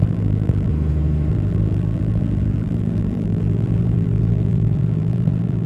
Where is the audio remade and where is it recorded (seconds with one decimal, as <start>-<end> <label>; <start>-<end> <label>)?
0.0-0.7 remade; 0.7-1.3 recorded; 1.3-5.7 remade